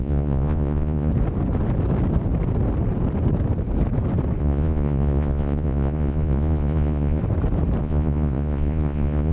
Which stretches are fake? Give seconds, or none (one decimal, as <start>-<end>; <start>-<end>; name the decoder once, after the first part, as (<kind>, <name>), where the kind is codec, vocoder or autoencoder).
0.0-1.1 (vocoder, Vocos); 4.4-7.2; 7.8-9.3